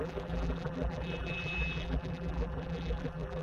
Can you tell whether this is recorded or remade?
remade